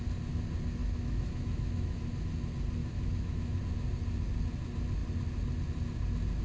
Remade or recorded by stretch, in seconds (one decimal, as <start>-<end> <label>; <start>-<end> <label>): 0.0-0.8 recorded; 0.8-2.0 remade; 2.0-2.8 recorded; 2.8-3.6 remade; 3.6-6.4 recorded